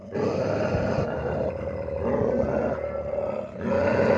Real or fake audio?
real